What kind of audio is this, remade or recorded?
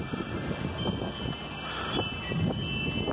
recorded